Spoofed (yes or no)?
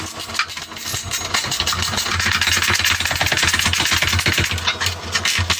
no